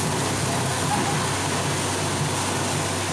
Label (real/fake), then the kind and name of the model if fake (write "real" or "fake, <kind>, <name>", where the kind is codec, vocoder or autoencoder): real